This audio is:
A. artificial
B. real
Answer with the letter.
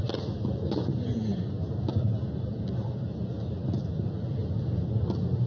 B